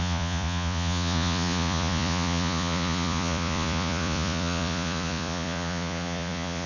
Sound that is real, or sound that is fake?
fake